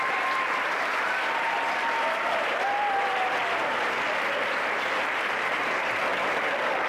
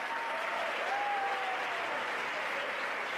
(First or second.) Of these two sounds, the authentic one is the second